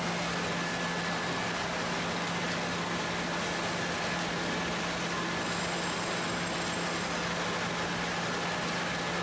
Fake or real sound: real